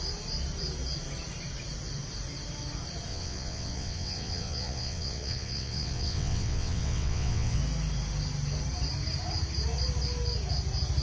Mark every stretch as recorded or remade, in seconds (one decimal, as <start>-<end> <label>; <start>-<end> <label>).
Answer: 0.0-3.1 recorded; 3.1-7.6 remade; 7.6-11.0 recorded